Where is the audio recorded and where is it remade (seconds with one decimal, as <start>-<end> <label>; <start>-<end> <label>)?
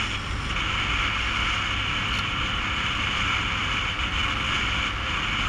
0.0-5.5 recorded